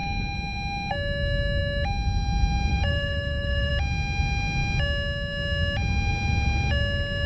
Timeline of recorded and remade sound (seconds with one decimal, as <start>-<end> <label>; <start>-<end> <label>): 0.0-2.7 recorded; 2.7-3.7 remade; 3.7-7.3 recorded